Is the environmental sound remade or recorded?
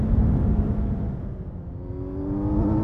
recorded